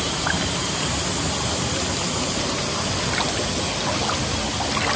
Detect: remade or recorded recorded